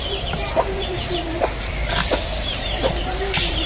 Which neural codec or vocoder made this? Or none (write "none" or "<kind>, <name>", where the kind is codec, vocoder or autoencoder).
vocoder, BigVGAN v2